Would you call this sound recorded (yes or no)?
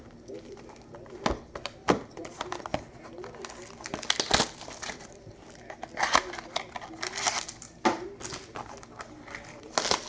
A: yes